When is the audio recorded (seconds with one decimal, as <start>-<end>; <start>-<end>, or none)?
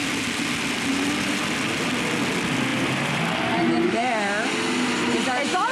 0.0-2.7; 3.2-5.7